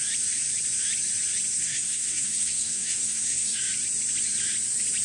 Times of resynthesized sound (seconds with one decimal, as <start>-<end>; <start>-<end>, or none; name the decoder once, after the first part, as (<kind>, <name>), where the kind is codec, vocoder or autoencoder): 1.5-3.6 (codec, SNAC)